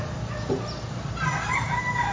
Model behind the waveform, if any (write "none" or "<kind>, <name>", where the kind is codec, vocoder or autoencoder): none